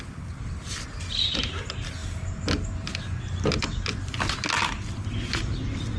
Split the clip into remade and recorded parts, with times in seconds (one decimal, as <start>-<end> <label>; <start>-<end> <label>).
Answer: 0.0-6.0 recorded